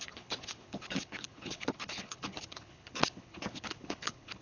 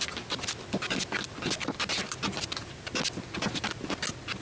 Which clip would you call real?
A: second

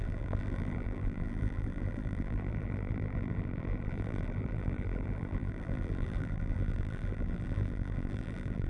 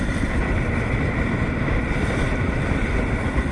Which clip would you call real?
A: second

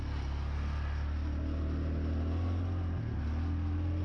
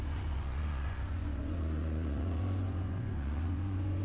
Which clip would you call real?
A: first